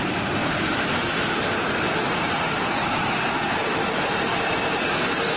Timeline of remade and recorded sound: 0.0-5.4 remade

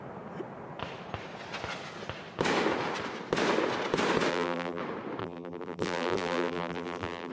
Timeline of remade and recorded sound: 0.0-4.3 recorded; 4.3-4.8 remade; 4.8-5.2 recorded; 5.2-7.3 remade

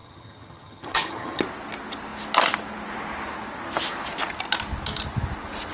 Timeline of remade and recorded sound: 0.0-1.4 remade; 1.4-5.7 recorded

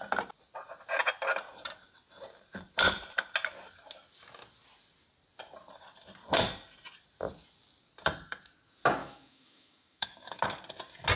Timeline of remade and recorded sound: 0.0-9.0 recorded; 9.0-10.4 remade; 10.4-11.2 recorded

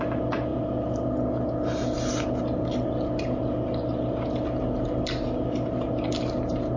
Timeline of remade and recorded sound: 0.0-6.8 recorded